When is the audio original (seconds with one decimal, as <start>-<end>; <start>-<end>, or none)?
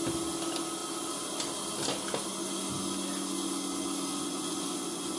0.0-4.1